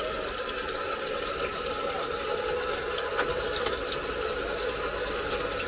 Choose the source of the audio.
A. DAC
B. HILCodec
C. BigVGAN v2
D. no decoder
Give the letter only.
D